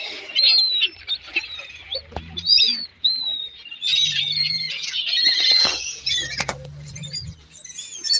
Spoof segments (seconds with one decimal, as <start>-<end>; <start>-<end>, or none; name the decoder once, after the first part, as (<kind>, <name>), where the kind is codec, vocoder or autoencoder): 0.0-0.5 (vocoder, Vocos); 1.4-8.2

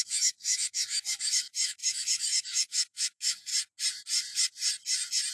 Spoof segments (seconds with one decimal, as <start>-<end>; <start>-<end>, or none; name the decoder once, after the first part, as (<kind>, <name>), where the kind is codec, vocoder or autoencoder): 0.0-3.5 (autoencoder, DAC-VAE)

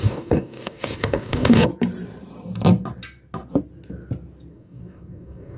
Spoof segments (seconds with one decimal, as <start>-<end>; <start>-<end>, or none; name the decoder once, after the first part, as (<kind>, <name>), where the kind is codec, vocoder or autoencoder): 0.0-1.7 (codec, DAC); 4.5-5.6

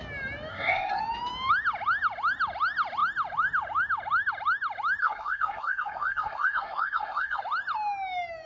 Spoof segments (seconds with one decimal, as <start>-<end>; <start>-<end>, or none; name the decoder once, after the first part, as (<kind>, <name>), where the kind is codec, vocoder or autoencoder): 0.5-1.0 (codec, SNAC); 5.0-7.4